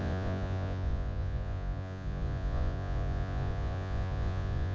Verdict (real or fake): fake